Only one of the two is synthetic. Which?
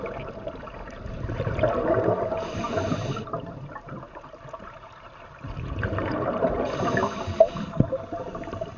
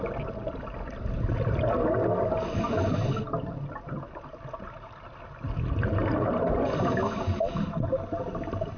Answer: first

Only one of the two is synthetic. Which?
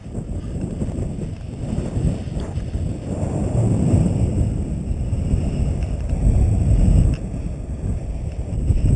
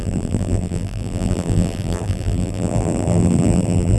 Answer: second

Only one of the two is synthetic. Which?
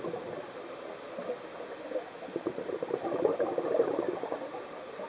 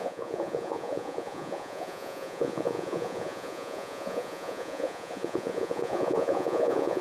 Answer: second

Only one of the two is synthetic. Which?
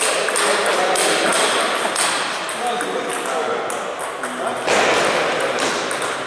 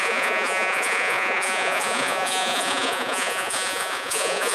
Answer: second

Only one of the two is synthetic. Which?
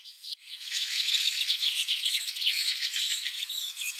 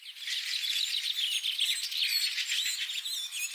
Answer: first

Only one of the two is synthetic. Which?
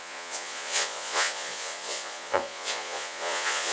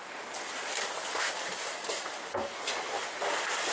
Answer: first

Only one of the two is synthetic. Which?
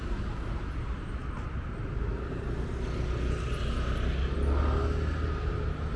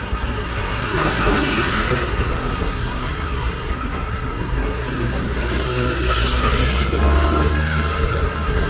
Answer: second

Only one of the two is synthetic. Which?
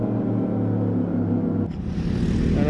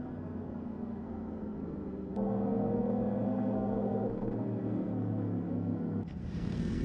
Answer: second